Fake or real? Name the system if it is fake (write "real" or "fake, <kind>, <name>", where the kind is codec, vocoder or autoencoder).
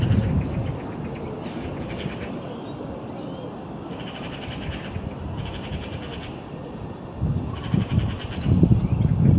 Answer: real